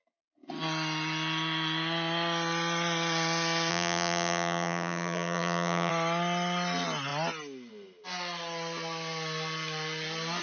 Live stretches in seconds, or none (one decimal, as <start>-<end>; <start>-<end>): 0.0-3.7; 5.9-10.4